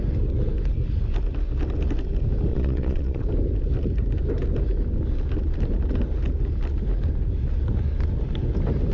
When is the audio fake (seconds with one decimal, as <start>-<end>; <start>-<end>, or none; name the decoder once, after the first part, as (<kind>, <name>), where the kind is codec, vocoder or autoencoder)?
2.5-3.2 (vocoder, Vocos)

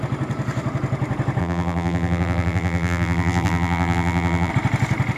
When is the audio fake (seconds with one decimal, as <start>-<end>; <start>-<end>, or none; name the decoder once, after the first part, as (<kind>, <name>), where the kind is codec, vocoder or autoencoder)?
1.4-4.5 (vocoder, BigVGAN v2)

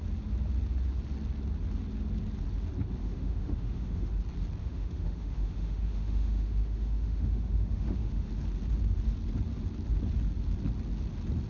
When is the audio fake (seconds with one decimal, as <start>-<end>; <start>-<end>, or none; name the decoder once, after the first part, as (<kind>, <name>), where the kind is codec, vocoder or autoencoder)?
3.0-4.1 (autoencoder, DAC-VAE); 4.6-8.3